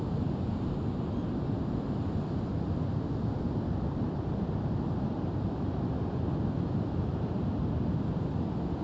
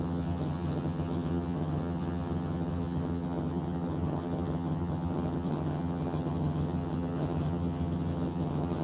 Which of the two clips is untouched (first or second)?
first